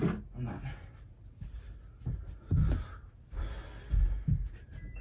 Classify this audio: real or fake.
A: real